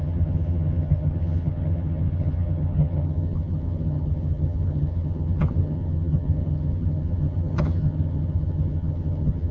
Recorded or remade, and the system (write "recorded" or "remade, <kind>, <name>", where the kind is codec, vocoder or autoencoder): remade, vocoder, HiFi-GAN